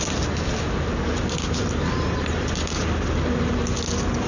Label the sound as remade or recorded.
recorded